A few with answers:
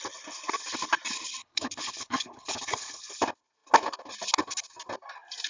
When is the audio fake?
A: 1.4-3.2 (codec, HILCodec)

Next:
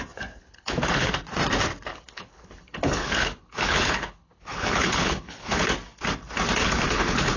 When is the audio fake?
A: 0.4-1.1 (codec, HILCodec); 1.9-5.7; 6.6-7.4

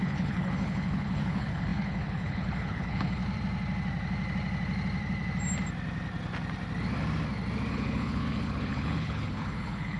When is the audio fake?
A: 0.0-3.2 (codec, HILCodec); 7.7-10.0

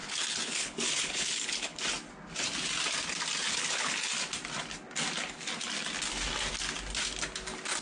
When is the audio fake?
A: 0.0-1.8 (codec, HILCodec); 3.4-4.1

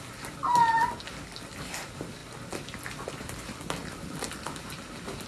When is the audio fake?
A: none

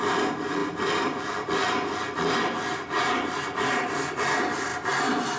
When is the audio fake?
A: none